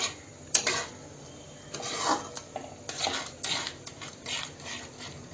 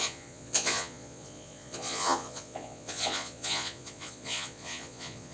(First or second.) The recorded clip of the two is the first